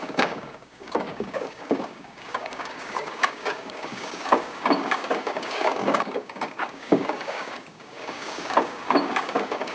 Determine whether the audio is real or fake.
fake